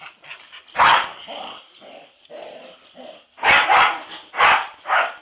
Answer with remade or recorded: recorded